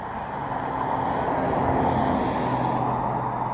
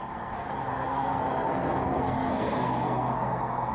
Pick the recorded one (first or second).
first